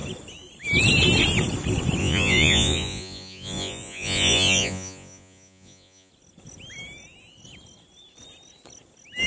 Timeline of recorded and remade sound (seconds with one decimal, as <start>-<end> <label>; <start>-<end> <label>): 0.0-2.0 recorded; 2.0-6.1 remade; 6.1-9.3 recorded